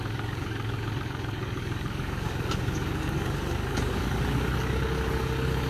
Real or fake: fake